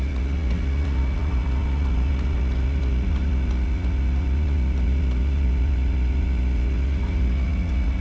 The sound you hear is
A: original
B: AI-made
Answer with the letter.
B